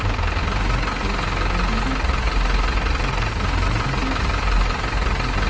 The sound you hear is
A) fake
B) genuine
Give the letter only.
B